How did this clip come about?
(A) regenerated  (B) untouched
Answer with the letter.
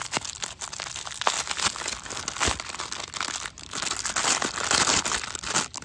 B